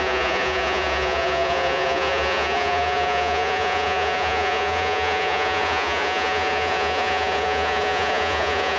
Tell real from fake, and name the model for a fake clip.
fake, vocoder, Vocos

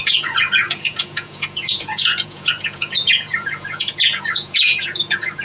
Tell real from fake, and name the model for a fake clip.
fake, vocoder, Vocos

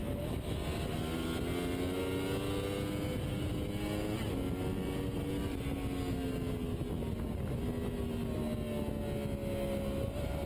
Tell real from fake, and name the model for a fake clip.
real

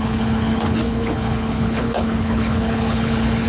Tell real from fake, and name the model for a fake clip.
fake, codec, HILCodec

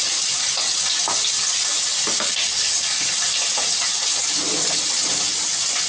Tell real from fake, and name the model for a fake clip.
real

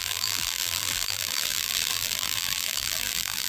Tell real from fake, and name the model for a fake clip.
fake, vocoder, BigVGAN v2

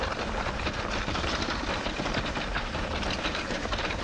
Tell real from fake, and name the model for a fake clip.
fake, vocoder, BigVGAN v2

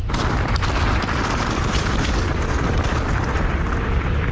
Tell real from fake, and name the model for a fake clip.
fake, vocoder, BigVGAN v2